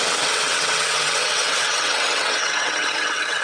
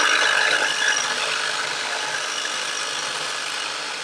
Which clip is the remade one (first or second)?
first